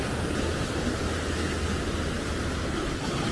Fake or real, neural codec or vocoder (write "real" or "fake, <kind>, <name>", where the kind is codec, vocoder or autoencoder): real